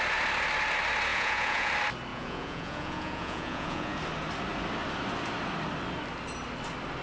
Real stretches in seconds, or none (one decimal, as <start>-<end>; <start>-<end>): 0.0-1.1; 1.7-2.1; 4.0-7.0